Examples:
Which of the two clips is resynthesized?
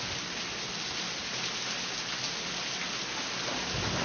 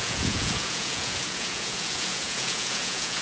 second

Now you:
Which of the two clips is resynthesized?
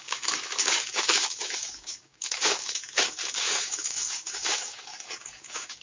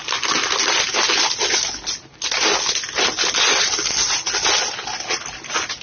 first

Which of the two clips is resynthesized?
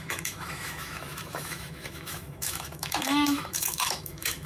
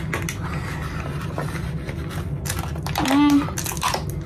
first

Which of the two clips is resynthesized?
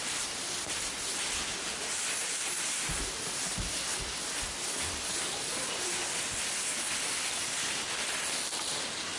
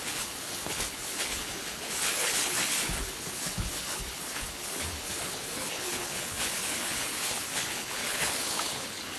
second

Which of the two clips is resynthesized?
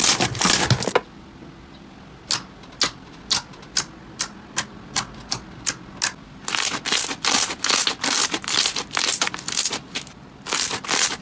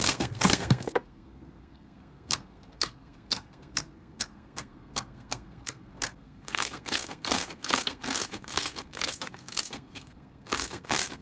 second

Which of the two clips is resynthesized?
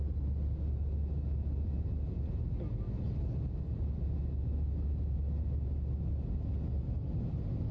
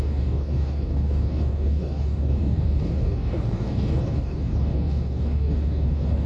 second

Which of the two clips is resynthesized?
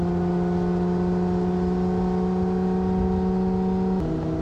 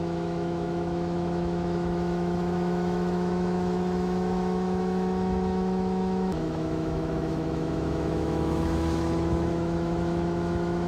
second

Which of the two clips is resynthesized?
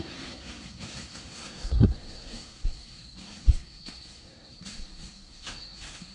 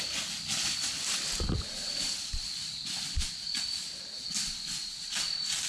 first